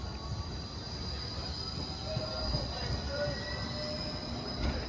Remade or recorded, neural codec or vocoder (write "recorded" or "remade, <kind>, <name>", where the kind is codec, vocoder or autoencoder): recorded